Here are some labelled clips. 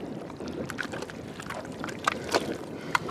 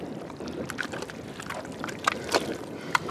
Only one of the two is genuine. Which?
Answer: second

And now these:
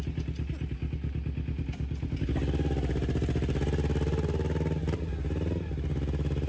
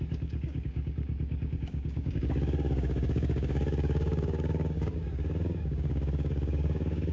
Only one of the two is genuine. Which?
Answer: first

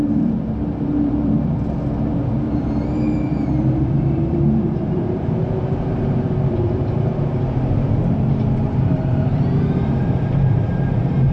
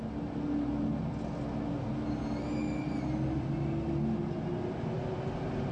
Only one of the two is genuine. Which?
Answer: second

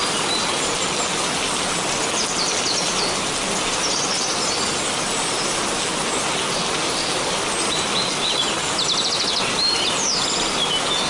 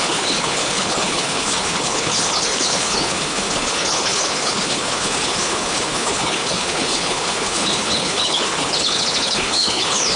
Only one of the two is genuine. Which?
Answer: first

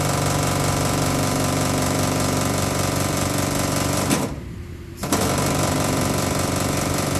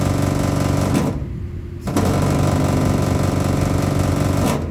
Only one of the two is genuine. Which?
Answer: second